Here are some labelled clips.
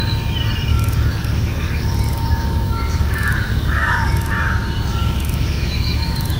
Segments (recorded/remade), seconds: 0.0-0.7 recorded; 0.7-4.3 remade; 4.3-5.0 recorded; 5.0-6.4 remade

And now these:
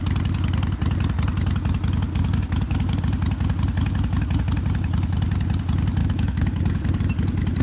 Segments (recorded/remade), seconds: 0.0-2.1 recorded; 2.1-3.0 remade; 3.0-6.0 recorded; 6.0-7.0 remade; 7.0-7.6 recorded

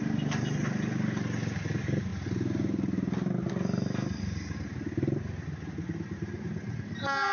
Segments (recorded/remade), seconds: 0.0-7.3 recorded

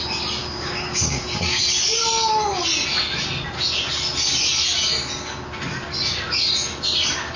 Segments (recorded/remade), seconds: 0.0-0.4 recorded; 0.4-1.6 remade; 1.6-7.4 recorded

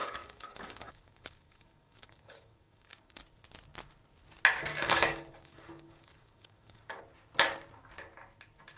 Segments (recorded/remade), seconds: 0.0-3.2 remade; 3.2-4.7 recorded; 4.7-7.0 remade; 7.0-8.8 recorded

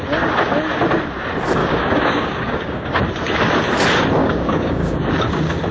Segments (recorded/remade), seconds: 0.0-1.6 recorded; 1.6-3.0 remade; 3.0-4.2 recorded; 4.2-5.1 remade; 5.1-5.7 recorded